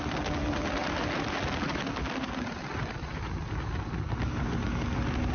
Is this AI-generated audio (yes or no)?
no